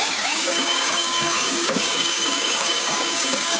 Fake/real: fake